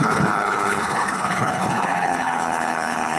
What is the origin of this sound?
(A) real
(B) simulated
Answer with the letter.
B